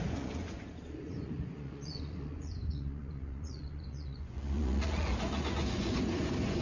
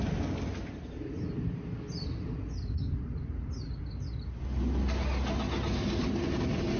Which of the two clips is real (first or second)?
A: second